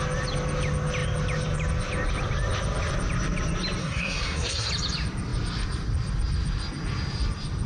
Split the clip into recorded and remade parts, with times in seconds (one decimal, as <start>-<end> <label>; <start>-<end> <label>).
0.0-3.8 recorded; 3.8-4.7 remade; 4.7-7.7 recorded